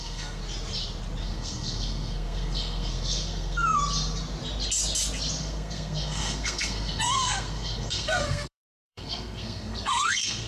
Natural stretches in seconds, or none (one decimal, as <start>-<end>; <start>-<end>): 0.4-1.2; 3.8-5.4

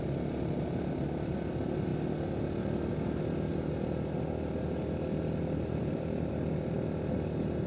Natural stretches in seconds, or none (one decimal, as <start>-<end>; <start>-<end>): 0.0-7.7

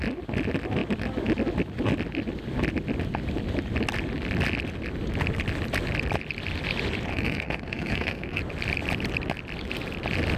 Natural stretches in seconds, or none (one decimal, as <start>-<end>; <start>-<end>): 0.0-7.1; 8.4-10.4

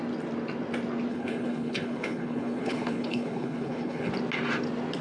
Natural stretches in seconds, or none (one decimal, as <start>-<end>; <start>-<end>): 0.0-1.1; 4.1-5.0